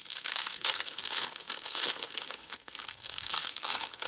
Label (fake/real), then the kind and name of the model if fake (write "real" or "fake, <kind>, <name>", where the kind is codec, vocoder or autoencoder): fake, codec, SNAC